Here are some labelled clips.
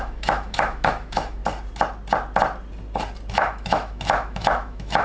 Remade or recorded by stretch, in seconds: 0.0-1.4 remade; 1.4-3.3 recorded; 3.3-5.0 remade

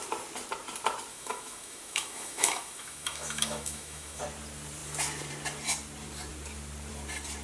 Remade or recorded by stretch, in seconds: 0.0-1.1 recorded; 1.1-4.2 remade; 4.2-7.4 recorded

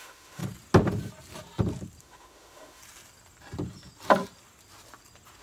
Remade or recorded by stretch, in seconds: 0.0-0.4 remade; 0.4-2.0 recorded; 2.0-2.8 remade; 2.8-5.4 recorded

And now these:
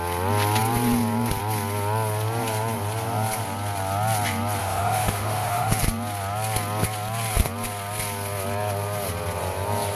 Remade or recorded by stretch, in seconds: 0.0-4.6 recorded; 4.6-5.7 remade; 5.7-10.0 recorded

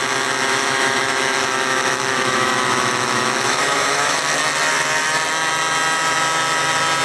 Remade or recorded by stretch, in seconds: 0.0-0.5 recorded; 0.5-4.2 remade; 4.2-7.0 recorded